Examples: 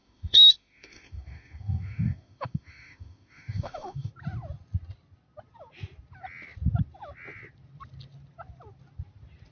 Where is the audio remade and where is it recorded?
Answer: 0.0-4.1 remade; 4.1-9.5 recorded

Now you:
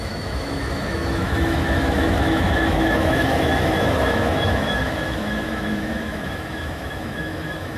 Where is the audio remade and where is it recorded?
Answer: 0.0-7.8 remade

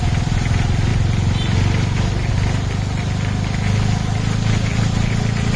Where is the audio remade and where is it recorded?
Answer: 0.0-5.6 recorded

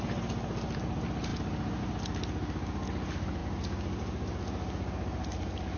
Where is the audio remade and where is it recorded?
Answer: 0.0-5.8 recorded